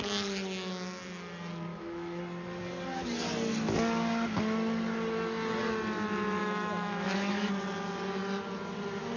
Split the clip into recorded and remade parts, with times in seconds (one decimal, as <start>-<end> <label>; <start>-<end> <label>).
0.0-1.7 recorded; 1.7-2.2 remade; 2.2-6.4 recorded; 6.4-7.5 remade; 7.5-9.2 recorded